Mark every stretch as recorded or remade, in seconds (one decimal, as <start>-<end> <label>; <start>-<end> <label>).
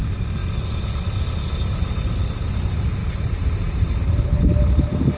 0.0-0.4 recorded; 0.4-1.0 remade; 1.0-3.0 recorded; 3.0-4.6 remade; 4.6-5.2 recorded